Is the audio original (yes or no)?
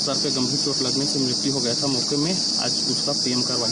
yes